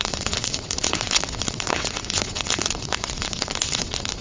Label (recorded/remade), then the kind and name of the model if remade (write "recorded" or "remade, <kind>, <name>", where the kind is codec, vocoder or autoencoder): remade, vocoder, WaveNeXt